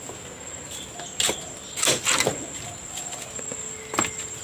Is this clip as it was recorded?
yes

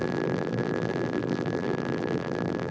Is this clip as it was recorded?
no